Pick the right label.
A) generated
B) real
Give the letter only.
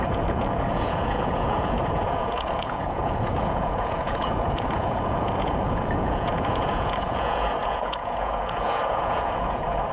A